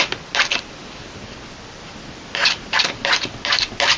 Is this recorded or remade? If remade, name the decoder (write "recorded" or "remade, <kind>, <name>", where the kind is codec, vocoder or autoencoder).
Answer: remade, vocoder, BigVGAN v2